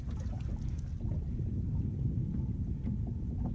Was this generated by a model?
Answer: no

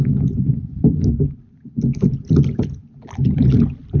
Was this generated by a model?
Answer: no